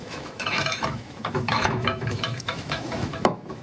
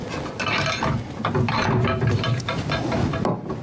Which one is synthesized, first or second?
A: first